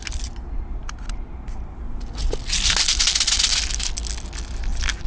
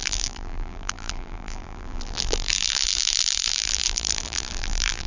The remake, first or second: second